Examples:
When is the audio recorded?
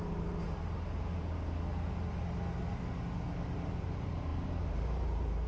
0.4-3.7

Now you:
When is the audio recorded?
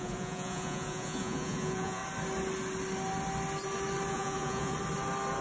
2.0-4.1; 4.7-5.4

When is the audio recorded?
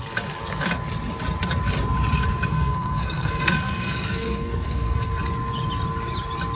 0.0-2.5; 5.1-6.5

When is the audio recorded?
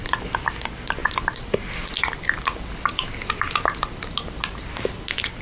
0.0-5.4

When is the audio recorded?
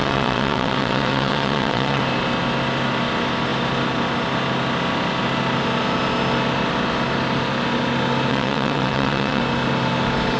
2.0-8.3; 9.4-10.4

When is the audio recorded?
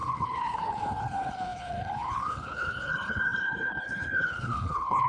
none